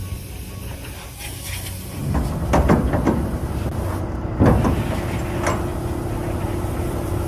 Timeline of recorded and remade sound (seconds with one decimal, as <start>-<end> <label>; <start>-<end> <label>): 0.0-7.3 recorded